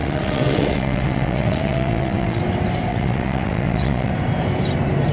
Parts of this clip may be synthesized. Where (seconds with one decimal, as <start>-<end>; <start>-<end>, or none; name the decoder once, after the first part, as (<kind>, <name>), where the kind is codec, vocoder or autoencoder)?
0.0-2.4 (vocoder, WaveNeXt); 2.9-4.1